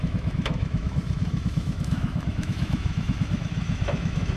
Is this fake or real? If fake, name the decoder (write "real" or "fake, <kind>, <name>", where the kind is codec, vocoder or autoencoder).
fake, autoencoder, DAC-VAE